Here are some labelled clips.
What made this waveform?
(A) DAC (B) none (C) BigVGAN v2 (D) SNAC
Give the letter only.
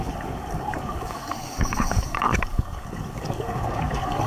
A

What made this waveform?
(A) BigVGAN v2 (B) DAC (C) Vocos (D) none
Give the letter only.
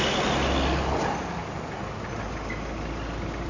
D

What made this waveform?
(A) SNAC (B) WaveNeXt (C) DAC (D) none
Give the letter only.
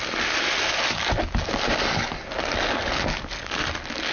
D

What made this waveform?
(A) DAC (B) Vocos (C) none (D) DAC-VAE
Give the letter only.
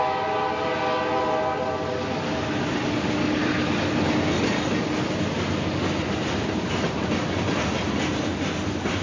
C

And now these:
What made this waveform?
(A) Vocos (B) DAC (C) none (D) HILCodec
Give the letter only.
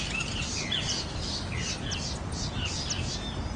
C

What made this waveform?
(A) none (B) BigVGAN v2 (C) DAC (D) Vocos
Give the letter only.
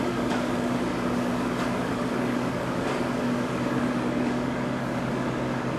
C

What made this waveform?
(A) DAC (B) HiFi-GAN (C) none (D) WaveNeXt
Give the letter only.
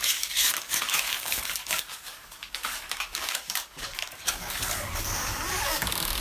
A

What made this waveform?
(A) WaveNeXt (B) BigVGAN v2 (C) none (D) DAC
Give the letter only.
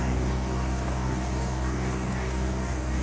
D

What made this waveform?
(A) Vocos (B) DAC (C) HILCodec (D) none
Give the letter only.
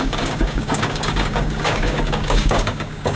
B